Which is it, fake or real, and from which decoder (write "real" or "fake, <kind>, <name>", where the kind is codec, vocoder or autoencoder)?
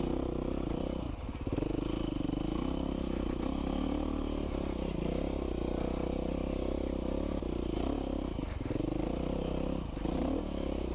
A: real